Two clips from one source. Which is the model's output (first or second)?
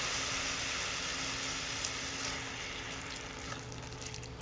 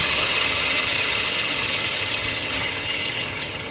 second